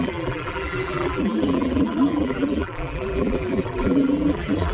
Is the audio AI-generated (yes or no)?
yes